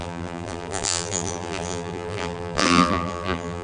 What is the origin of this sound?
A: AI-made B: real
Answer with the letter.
A